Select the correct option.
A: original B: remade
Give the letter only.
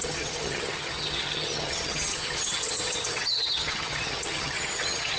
B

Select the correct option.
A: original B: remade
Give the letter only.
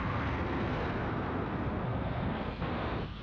B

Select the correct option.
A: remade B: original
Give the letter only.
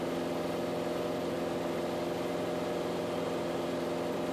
B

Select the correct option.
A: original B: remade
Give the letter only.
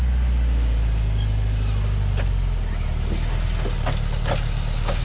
A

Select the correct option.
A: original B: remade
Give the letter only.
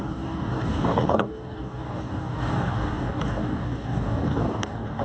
B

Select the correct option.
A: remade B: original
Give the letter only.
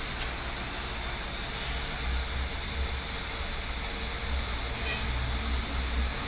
B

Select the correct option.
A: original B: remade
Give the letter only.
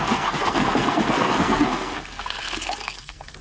B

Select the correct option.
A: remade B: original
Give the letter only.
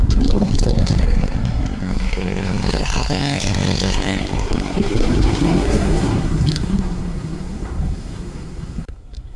A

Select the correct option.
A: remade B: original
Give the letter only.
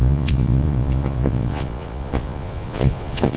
A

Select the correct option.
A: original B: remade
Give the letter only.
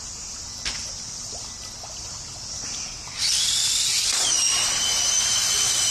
A